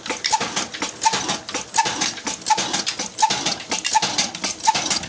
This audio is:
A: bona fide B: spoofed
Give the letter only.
A